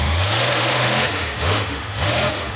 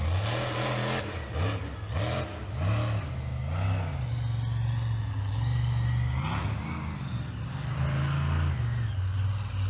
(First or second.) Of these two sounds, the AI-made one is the first